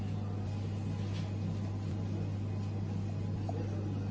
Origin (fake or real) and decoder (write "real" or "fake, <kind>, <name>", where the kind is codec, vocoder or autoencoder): real